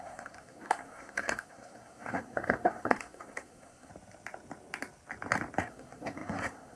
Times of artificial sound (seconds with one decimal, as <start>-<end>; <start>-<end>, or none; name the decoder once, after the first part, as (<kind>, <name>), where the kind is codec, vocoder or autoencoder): 0.0-3.9 (codec, SNAC); 5.6-6.8